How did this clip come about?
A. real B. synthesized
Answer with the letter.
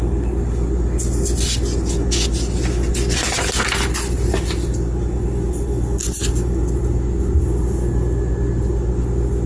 A